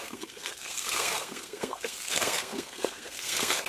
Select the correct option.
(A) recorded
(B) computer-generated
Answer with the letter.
B